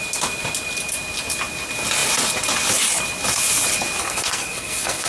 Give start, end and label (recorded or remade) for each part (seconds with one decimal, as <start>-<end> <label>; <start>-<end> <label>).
0.0-4.0 recorded; 4.0-5.1 remade